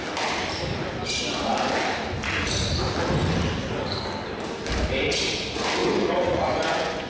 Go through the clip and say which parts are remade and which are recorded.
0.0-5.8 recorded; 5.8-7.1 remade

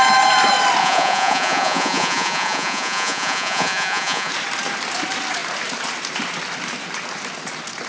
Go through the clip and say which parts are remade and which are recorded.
0.0-0.8 recorded; 0.8-4.3 remade; 4.3-7.9 recorded

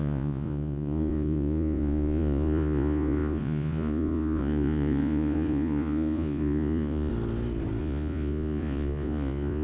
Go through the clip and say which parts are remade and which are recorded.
0.0-7.1 remade; 7.1-7.8 recorded; 7.8-9.6 remade

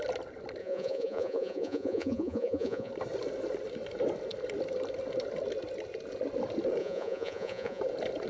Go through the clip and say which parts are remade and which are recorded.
0.0-0.6 recorded; 0.6-2.9 remade; 2.9-6.8 recorded; 6.8-7.8 remade; 7.8-8.3 recorded

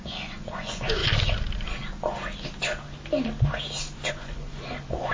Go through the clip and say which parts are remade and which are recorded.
0.0-1.0 remade; 1.0-4.1 recorded; 4.1-5.1 remade

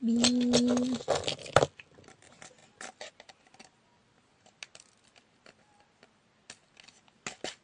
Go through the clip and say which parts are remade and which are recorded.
0.0-7.6 recorded